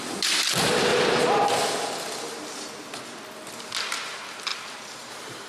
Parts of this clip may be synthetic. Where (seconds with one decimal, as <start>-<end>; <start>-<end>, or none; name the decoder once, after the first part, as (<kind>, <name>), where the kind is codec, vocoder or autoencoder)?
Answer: 4.5-5.1 (vocoder, BigVGAN v2)